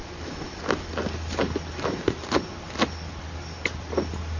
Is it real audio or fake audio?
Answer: real